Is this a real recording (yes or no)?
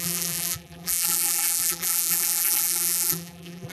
no